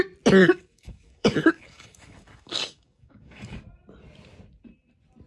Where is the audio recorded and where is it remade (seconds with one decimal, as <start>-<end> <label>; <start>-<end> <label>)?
0.0-0.4 recorded; 0.4-3.6 remade; 3.6-5.3 recorded